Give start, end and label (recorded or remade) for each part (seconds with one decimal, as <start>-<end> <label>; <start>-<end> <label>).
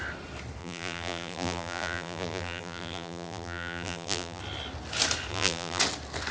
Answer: 0.0-0.6 recorded; 0.6-4.4 remade; 4.4-5.3 recorded; 5.3-5.8 remade; 5.8-6.3 recorded